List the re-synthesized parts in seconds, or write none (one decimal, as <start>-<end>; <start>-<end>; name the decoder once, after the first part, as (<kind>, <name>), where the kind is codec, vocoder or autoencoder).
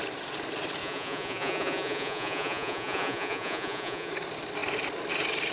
0.8-4.1 (vocoder, Vocos)